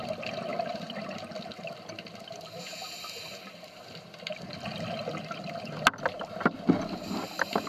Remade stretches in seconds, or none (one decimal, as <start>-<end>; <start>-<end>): none